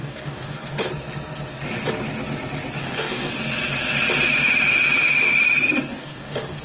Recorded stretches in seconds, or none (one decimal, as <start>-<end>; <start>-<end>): 0.9-2.8; 3.3-5.9